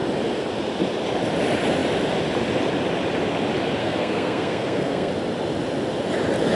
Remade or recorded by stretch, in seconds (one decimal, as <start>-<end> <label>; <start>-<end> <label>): 0.0-3.8 recorded; 3.8-5.1 remade; 5.1-6.6 recorded